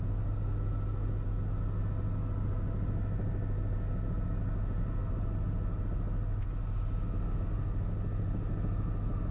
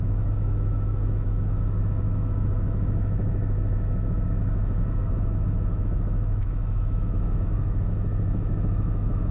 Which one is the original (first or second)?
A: first